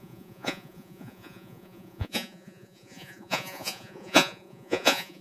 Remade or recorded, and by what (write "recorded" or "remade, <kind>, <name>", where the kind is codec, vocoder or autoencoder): remade, vocoder, Vocos